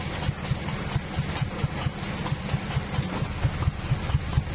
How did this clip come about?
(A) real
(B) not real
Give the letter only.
A